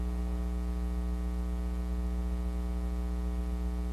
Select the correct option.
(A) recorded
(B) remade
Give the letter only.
A